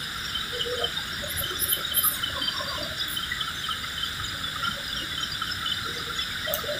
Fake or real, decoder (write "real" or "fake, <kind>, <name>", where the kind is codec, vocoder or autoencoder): real